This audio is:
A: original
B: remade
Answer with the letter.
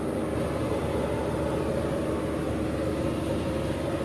A